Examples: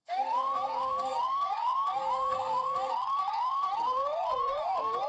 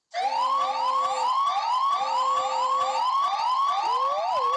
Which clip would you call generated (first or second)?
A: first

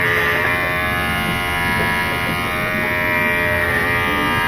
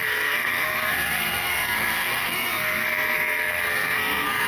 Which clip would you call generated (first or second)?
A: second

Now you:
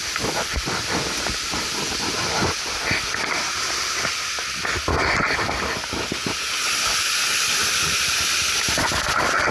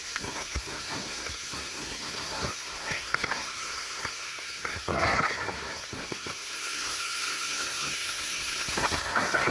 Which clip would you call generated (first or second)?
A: second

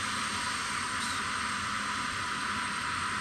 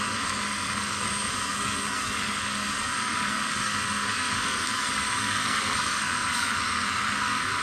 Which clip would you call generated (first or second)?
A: second